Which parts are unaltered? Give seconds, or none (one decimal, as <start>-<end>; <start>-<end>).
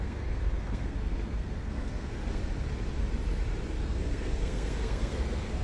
2.4-3.8